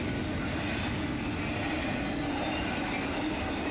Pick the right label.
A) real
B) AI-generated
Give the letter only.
A